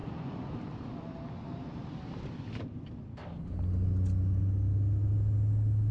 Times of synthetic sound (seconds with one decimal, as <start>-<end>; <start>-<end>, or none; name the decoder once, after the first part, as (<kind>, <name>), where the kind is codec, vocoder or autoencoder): 0.0-0.5 (vocoder, Vocos)